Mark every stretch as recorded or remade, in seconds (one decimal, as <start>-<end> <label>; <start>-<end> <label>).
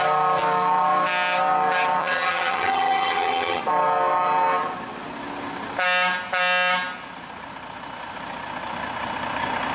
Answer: 0.0-2.0 recorded; 2.0-3.6 remade; 3.6-9.7 recorded